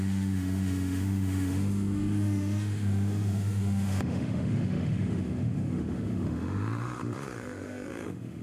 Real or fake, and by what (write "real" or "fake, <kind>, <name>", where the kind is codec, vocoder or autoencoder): fake, autoencoder, DAC-VAE